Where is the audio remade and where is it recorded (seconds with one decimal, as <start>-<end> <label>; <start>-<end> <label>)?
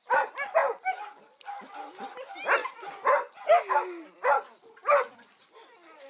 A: 0.0-6.1 recorded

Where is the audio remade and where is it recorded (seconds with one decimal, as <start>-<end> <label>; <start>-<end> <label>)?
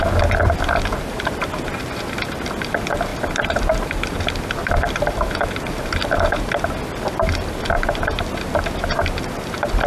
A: 0.0-0.9 recorded; 0.9-1.5 remade; 1.5-9.9 recorded